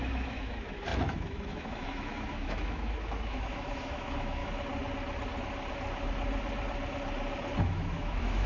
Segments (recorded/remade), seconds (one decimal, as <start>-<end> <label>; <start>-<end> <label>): 0.0-4.4 remade; 4.4-7.6 recorded; 7.6-8.5 remade